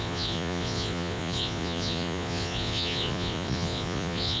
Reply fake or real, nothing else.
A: fake